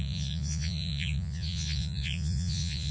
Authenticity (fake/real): fake